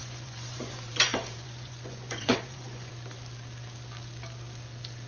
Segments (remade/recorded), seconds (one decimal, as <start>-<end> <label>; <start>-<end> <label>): 0.0-2.9 remade; 2.9-5.1 recorded